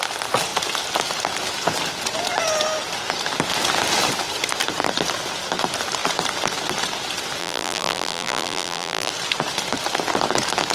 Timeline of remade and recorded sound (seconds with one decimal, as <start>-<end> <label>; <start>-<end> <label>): 0.0-7.4 recorded; 7.4-9.1 remade; 9.1-10.7 recorded